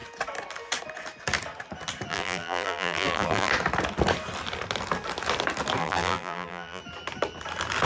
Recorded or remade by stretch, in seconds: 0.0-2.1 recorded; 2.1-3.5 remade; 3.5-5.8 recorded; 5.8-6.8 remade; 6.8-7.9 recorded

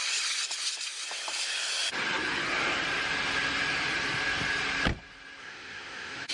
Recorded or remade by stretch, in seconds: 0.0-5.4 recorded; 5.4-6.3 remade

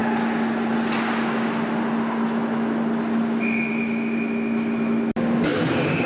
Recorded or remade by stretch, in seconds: 0.0-6.1 recorded